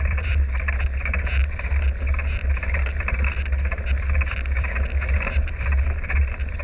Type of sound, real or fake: real